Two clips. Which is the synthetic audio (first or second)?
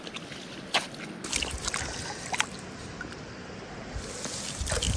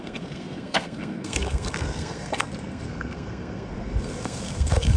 second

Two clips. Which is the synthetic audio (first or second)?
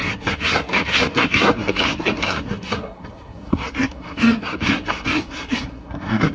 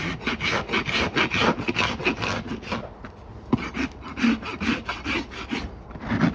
first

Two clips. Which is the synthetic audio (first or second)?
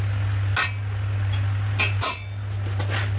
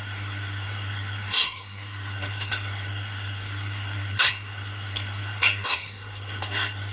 second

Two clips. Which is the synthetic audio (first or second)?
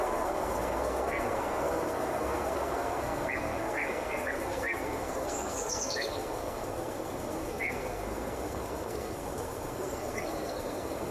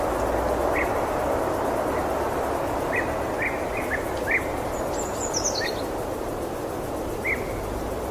first